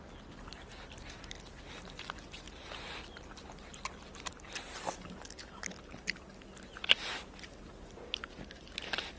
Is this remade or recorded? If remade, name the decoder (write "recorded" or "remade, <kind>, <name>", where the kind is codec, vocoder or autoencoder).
recorded